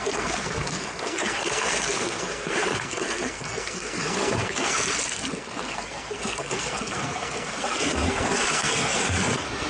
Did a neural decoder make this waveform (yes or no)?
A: yes